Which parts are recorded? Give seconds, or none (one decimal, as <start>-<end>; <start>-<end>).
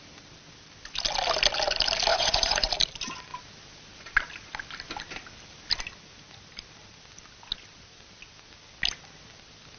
0.0-2.1; 2.7-9.8